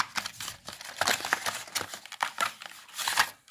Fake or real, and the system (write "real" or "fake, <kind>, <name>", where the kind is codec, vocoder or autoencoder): real